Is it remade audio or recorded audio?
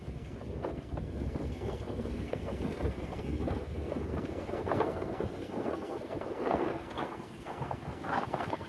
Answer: remade